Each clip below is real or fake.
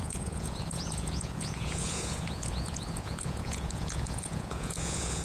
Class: fake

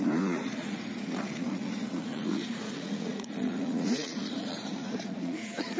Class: fake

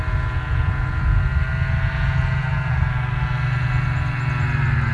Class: real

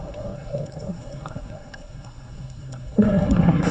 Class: fake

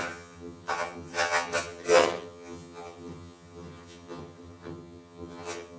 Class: fake